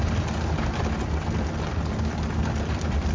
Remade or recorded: recorded